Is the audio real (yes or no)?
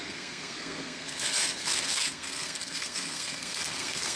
no